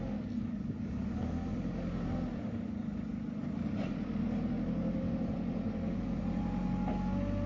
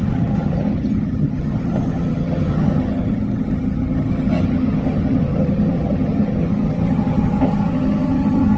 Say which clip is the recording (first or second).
first